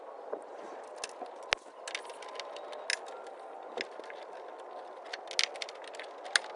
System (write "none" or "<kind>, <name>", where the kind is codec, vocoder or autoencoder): none